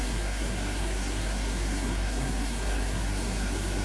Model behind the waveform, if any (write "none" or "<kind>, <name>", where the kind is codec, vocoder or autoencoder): codec, SNAC